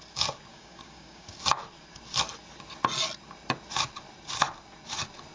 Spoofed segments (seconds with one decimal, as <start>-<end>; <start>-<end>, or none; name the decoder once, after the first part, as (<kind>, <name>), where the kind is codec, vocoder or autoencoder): 0.5-1.4 (codec, DAC)